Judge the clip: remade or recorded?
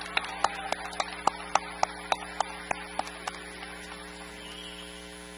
recorded